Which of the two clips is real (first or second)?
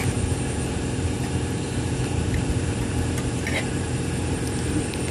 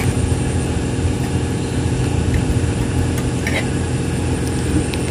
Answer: second